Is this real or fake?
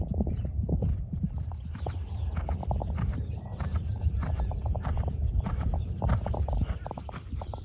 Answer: fake